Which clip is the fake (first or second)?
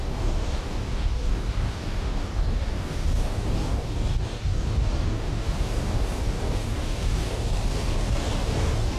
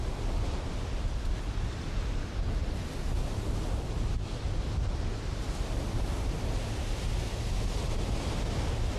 first